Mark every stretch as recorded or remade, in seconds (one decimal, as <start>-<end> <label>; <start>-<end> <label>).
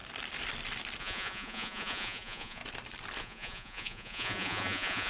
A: 0.0-1.0 recorded; 1.0-2.6 remade; 2.6-3.2 recorded; 3.2-5.1 remade